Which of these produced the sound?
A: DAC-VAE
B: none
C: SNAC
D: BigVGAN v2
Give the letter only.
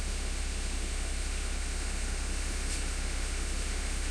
A